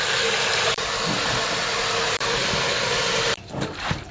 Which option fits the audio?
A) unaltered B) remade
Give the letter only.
B